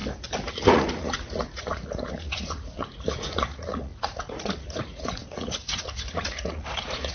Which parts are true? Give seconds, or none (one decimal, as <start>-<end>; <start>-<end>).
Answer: 0.0-0.5